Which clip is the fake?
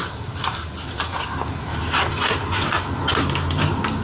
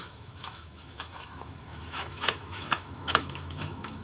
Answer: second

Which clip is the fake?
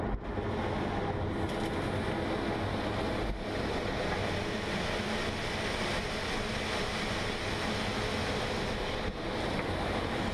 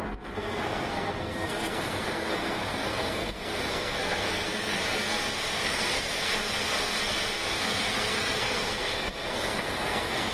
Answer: second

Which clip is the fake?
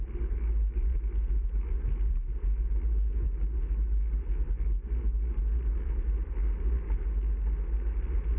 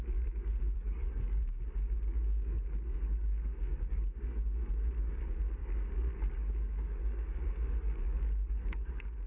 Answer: second